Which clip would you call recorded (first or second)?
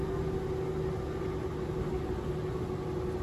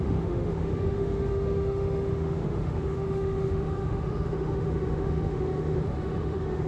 first